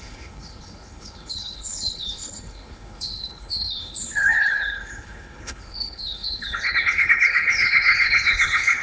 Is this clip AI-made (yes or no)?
yes